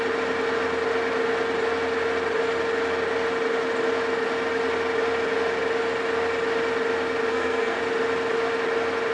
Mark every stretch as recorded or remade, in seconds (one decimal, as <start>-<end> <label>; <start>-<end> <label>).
0.0-7.3 recorded; 7.3-7.8 remade; 7.8-9.1 recorded